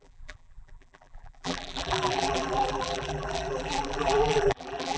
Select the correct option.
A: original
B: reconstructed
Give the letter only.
B